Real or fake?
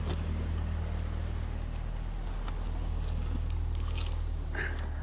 real